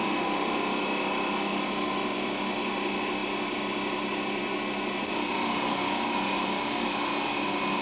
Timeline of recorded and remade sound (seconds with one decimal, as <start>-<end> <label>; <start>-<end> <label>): 0.0-3.2 recorded; 3.2-4.4 remade; 4.4-7.8 recorded